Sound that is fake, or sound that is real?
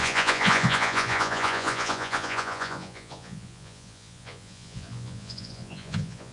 fake